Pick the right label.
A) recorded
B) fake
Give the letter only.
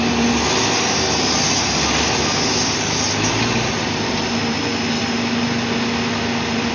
A